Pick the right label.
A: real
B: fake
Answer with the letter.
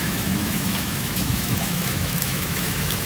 B